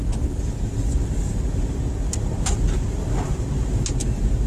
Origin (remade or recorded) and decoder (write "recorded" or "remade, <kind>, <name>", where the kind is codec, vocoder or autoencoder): recorded